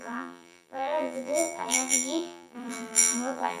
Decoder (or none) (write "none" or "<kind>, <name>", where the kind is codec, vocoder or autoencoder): vocoder, BigVGAN v2